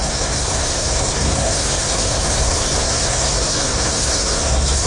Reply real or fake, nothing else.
fake